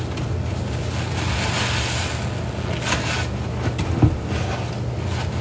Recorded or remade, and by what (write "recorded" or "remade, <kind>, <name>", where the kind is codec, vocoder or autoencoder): recorded